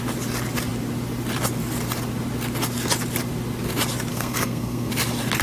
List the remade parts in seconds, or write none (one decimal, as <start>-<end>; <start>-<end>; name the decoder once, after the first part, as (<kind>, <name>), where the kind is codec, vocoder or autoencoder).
4.1-4.9 (codec, SNAC)

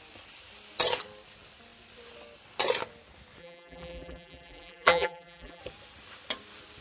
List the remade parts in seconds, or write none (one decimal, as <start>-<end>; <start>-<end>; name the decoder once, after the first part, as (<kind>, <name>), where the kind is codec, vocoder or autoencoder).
3.4-5.6 (vocoder, BigVGAN v2)

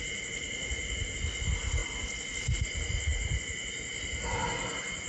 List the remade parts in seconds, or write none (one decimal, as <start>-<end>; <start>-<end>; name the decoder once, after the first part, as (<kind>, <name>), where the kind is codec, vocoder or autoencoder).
none

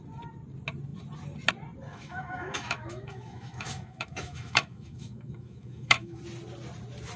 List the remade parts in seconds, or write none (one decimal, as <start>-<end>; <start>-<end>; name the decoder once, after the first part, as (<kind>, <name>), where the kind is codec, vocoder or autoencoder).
1.9-6.2 (autoencoder, DAC-VAE)

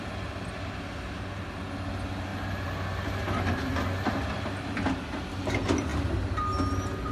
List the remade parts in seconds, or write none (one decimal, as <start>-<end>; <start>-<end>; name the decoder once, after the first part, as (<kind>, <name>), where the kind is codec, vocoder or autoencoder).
none